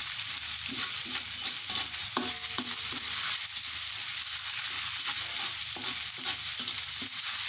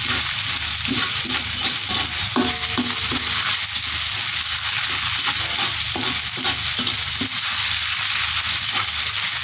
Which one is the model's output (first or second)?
first